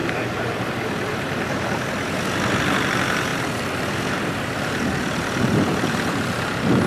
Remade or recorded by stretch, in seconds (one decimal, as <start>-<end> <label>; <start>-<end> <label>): 0.0-0.6 remade; 0.6-1.1 recorded; 1.1-2.2 remade; 2.2-6.9 recorded